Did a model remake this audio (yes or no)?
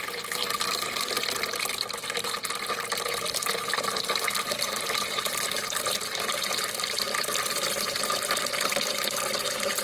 no